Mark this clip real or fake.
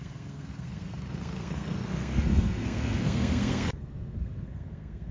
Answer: fake